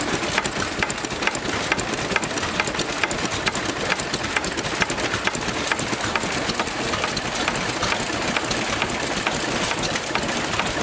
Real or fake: real